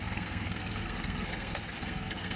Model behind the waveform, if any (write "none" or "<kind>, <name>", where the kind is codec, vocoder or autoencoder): codec, SNAC